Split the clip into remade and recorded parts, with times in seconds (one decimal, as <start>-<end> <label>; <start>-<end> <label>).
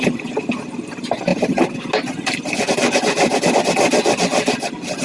0.0-5.0 recorded